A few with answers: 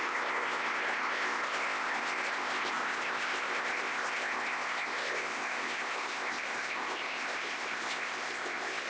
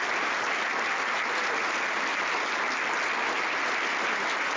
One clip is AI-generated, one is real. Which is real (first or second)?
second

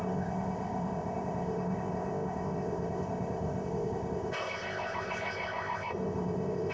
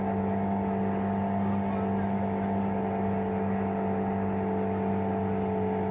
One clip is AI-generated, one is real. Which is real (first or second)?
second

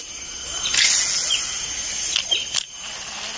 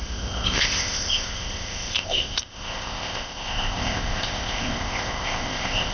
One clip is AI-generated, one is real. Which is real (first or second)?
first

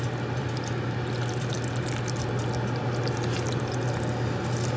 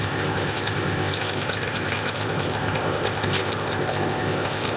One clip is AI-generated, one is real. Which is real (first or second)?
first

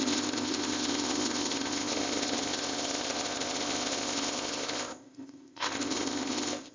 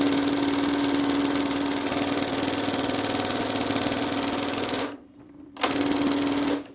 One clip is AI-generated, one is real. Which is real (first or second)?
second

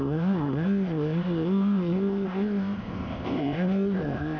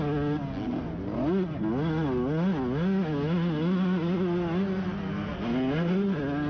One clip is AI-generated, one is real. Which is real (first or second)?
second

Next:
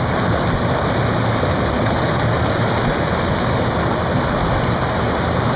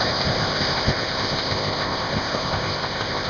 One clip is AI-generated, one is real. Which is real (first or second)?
first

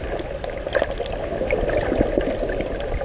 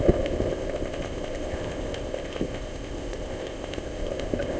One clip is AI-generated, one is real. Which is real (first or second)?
first